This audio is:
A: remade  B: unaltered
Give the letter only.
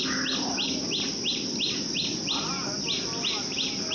B